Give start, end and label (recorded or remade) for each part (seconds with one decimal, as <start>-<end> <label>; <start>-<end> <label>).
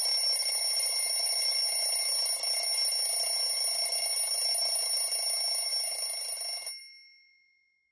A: 0.0-7.9 recorded